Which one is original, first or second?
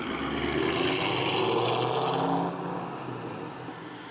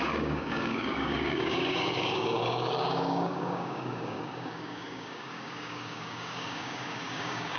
first